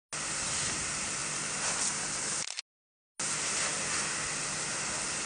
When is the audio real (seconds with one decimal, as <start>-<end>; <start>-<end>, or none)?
0.0-5.3